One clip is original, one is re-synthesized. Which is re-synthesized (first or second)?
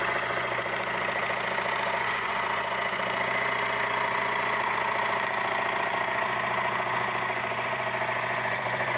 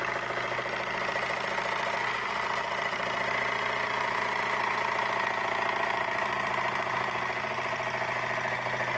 first